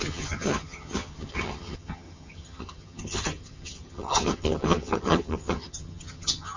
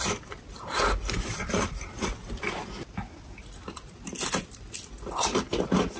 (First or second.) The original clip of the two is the second